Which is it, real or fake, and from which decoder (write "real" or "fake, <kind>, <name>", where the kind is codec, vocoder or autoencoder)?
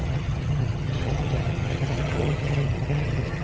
fake, vocoder, HiFi-GAN